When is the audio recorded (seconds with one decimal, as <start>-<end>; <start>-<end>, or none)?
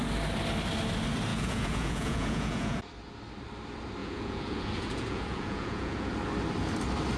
0.0-1.3; 2.8-4.0; 6.1-7.2